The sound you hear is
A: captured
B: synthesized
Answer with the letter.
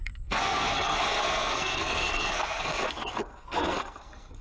B